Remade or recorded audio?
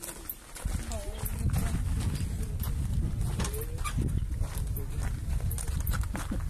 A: recorded